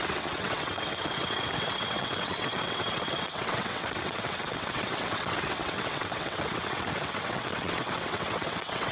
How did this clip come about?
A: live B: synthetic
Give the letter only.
B